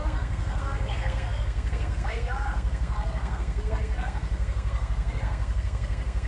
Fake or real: fake